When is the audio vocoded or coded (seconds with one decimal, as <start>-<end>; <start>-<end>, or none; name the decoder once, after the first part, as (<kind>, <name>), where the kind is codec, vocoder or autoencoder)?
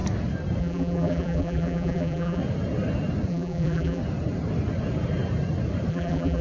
0.6-2.4 (vocoder, BigVGAN v2); 3.3-4.0; 5.9-6.4